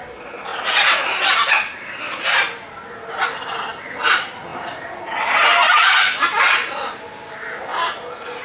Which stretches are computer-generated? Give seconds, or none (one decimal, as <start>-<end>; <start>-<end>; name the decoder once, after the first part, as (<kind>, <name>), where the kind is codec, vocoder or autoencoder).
none